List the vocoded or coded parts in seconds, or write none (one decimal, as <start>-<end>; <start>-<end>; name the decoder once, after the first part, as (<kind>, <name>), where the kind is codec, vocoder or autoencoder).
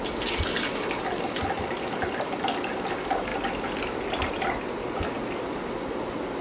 none